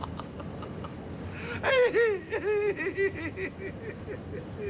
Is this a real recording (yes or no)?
yes